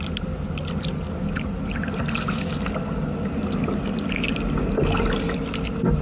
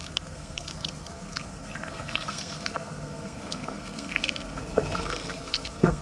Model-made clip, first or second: second